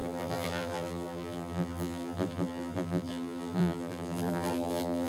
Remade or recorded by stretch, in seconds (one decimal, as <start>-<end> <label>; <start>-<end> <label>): 0.0-5.1 remade

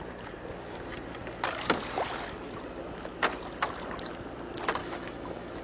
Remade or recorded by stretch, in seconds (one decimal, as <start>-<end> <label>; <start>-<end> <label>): 0.0-4.8 recorded; 4.8-5.6 remade

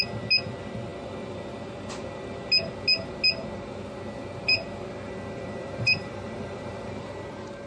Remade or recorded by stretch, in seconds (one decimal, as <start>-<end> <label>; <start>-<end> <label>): 0.0-5.6 recorded; 5.6-7.0 remade; 7.0-7.7 recorded

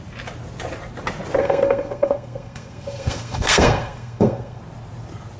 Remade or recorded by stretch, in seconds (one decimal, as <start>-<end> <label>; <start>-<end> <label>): 0.0-1.4 recorded; 1.4-4.6 remade; 4.6-5.4 recorded

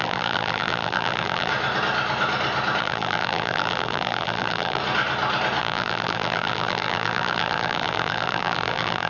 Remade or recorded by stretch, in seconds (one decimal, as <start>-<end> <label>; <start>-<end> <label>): 0.0-1.5 remade; 1.5-2.8 recorded; 2.8-4.8 remade; 4.8-5.6 recorded; 5.6-9.1 remade